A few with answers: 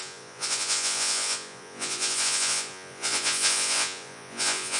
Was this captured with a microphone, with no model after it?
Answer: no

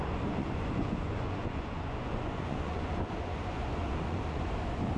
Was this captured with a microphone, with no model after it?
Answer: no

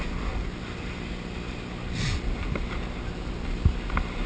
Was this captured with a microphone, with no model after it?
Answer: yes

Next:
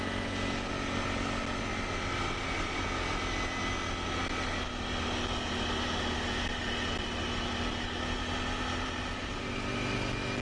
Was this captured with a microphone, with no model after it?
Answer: yes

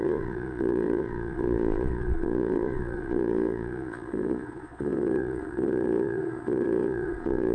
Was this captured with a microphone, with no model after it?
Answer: no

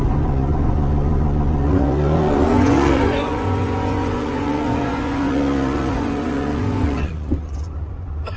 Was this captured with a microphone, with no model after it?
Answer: no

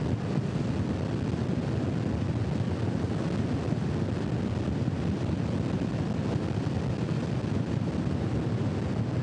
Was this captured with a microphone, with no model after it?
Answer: yes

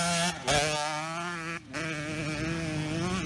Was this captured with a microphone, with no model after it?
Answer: yes